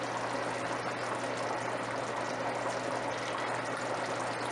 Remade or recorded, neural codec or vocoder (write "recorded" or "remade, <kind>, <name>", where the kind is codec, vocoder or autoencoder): recorded